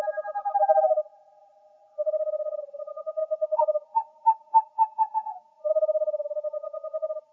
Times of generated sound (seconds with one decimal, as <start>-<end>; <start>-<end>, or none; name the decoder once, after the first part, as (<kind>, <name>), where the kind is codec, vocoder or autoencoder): none